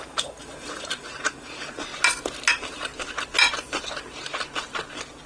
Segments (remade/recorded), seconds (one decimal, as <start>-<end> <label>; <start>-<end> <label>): 0.0-1.9 remade; 1.9-2.5 recorded; 2.5-2.9 remade; 2.9-5.3 recorded